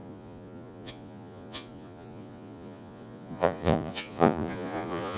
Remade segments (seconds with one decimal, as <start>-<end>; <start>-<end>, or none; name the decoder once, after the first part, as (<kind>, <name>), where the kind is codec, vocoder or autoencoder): 0.0-5.2 (vocoder, Vocos)